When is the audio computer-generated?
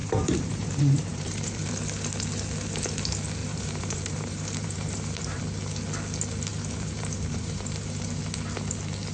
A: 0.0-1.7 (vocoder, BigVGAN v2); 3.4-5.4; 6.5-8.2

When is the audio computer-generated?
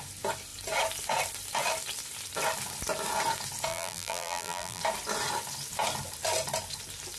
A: 3.7-4.8 (vocoder, BigVGAN v2)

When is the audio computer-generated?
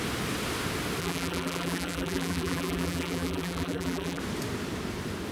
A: 1.0-4.2 (vocoder, BigVGAN v2)